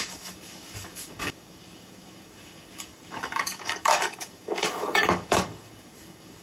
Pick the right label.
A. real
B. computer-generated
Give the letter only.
B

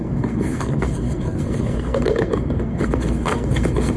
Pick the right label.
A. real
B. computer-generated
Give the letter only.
B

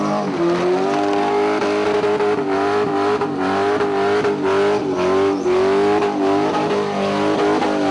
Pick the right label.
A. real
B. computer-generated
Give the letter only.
B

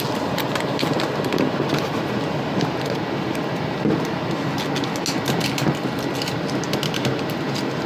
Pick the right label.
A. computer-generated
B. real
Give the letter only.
B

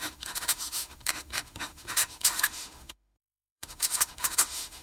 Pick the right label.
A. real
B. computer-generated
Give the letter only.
B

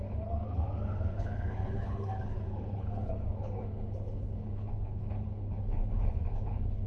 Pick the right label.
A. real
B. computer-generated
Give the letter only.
B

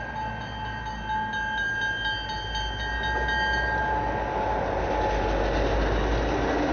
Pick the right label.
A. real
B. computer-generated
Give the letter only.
A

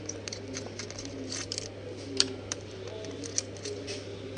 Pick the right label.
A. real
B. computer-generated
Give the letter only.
B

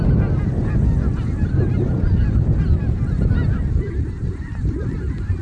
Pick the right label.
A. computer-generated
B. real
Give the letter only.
B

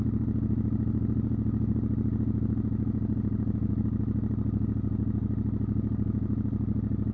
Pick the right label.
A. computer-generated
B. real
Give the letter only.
B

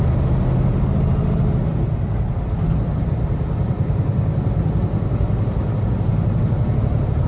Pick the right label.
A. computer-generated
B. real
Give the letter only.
B